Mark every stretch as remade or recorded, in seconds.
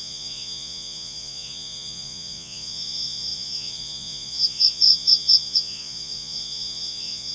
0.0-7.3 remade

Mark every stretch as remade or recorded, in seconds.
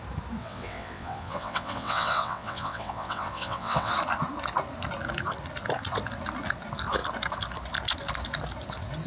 0.0-0.4 recorded; 0.4-3.9 remade; 3.9-9.1 recorded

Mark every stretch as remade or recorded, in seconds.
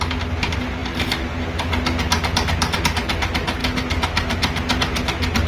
0.0-5.5 recorded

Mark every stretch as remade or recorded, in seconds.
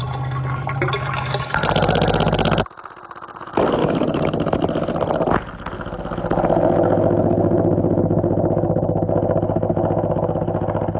0.0-3.8 recorded; 3.8-4.6 remade; 4.6-11.0 recorded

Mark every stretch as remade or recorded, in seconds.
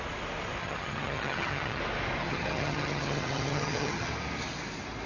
0.0-0.6 recorded; 0.6-1.8 remade; 1.8-2.2 recorded; 2.2-4.1 remade; 4.1-5.1 recorded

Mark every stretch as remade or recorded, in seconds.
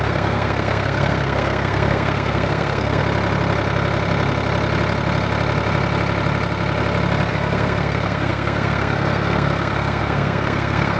0.0-3.0 remade; 3.0-7.3 recorded; 7.3-11.0 remade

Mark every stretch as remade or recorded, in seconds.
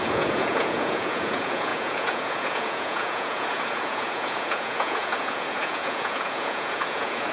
0.0-7.3 remade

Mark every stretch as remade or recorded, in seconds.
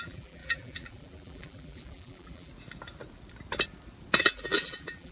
0.0-2.5 remade; 2.5-4.2 recorded; 4.2-5.1 remade